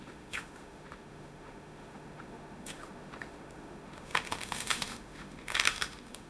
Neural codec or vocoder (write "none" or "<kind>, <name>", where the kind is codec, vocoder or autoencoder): autoencoder, DAC-VAE